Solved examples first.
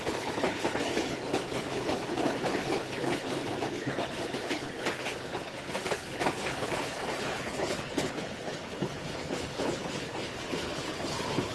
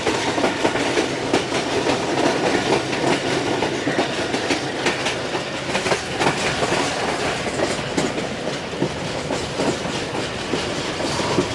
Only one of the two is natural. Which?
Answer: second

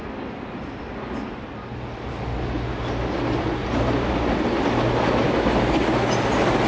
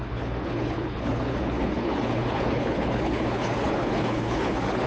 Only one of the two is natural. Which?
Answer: first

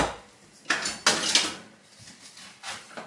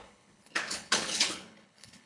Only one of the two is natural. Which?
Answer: first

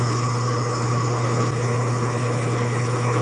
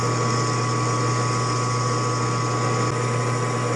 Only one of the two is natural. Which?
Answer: second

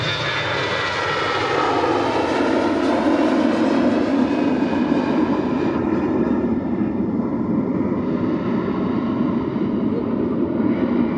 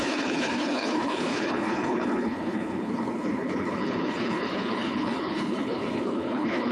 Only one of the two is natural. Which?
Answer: first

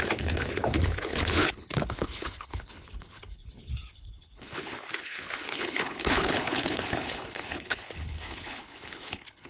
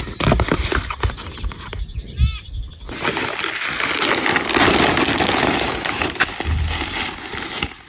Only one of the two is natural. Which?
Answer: second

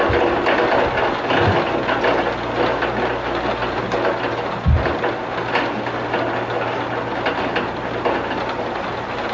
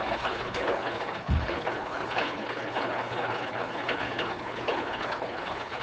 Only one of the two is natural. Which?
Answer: first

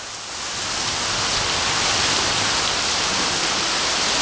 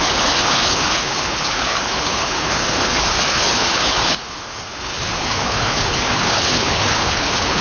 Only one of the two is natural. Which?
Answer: first